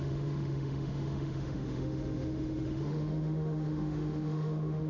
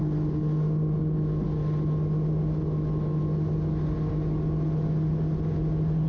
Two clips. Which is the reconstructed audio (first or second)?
first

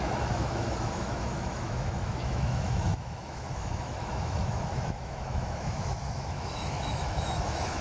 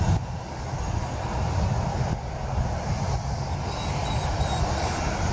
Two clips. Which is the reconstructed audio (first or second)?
first